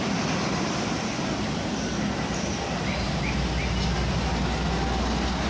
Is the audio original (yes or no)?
yes